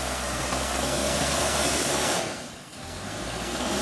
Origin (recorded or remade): remade